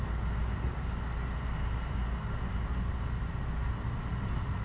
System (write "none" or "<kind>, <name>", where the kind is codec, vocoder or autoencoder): none